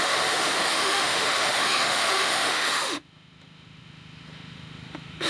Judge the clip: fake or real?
fake